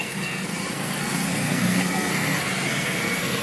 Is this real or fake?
fake